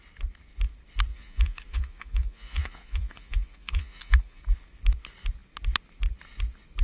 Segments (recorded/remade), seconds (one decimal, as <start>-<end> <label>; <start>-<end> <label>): 0.0-1.1 recorded; 1.1-4.4 remade; 4.4-6.8 recorded